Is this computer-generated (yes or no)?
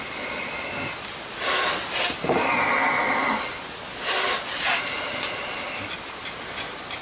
no